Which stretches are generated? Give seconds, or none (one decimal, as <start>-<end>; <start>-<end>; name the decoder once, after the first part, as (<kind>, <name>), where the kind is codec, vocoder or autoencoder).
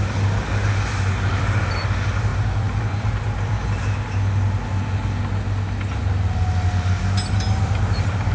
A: none